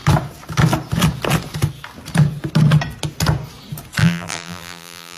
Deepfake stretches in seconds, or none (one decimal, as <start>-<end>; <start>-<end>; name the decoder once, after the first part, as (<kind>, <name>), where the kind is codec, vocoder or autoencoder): 4.0-5.2 (vocoder, BigVGAN v2)